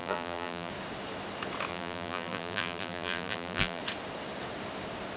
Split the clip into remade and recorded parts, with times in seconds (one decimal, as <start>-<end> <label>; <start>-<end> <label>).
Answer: 0.0-0.7 remade; 0.7-1.7 recorded; 1.7-3.8 remade; 3.8-5.2 recorded